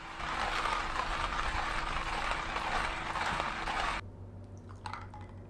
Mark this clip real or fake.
real